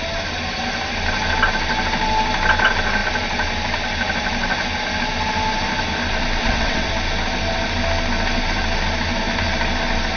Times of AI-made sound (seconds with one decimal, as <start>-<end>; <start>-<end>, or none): 6.4-6.9